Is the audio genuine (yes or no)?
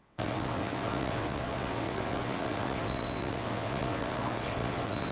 no